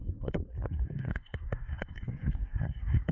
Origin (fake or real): fake